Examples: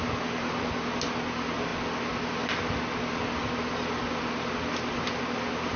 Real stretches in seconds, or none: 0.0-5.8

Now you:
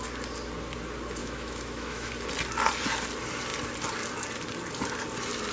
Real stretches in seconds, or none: 0.0-1.2; 2.1-5.5

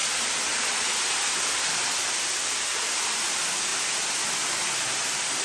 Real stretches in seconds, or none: 0.0-5.4

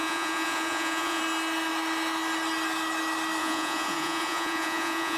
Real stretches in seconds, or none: 1.2-3.4

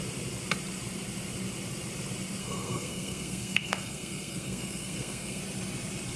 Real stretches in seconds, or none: 0.0-2.4; 5.4-6.2

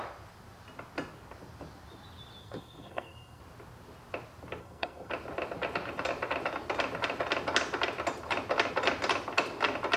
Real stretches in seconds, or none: 0.0-2.4; 3.4-4.6; 5.1-10.0

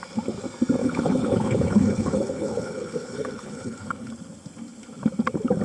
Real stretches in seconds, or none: 0.0-0.8; 4.1-5.6

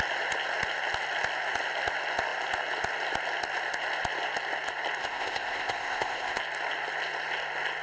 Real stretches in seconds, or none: 0.0-5.0; 6.4-7.8